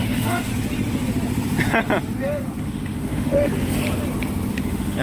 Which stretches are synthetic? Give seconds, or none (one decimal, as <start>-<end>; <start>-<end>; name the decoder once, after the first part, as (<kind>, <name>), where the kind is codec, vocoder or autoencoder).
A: 0.0-0.5 (autoencoder, DAC-VAE); 2.6-3.5; 4.5-5.0